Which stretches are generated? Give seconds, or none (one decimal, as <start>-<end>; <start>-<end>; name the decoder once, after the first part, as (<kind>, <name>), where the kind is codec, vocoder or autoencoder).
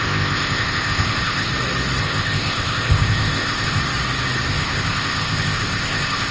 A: 0.0-1.5 (codec, ZipCodec); 2.0-3.8; 4.5-6.3